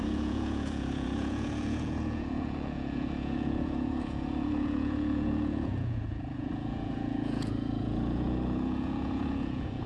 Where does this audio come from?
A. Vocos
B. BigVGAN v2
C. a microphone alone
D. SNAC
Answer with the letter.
A